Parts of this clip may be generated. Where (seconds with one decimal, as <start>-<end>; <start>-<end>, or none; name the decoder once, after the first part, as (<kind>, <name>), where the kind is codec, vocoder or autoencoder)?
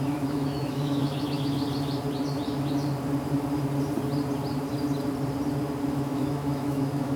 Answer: 0.0-1.6 (autoencoder, DAC-VAE); 5.9-7.2